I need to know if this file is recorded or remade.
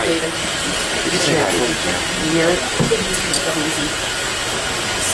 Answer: recorded